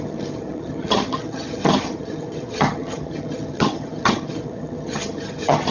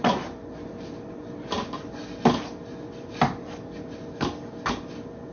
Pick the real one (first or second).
second